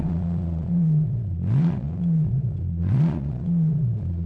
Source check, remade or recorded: remade